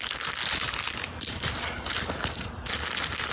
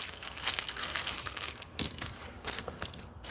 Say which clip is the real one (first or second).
first